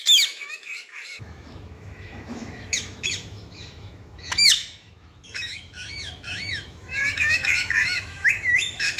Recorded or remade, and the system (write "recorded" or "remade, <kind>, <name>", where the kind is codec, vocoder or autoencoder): remade, autoencoder, DAC-VAE